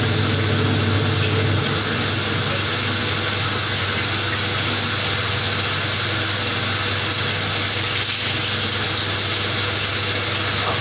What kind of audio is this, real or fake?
real